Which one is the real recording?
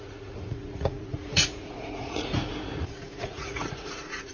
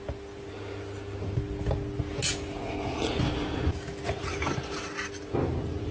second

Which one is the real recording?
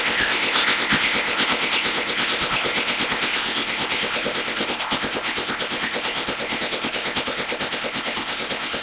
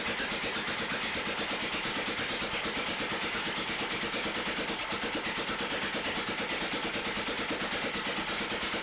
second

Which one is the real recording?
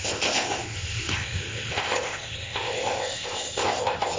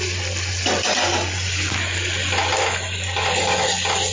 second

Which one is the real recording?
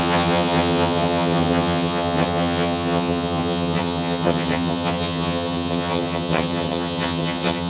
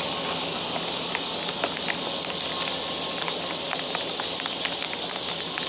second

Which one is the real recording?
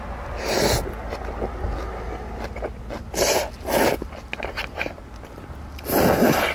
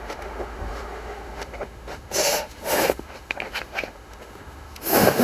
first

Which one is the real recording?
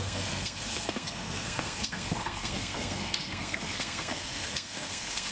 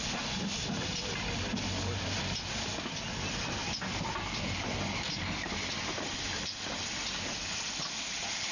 second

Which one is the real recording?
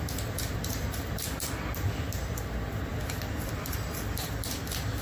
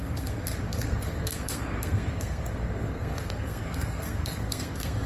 first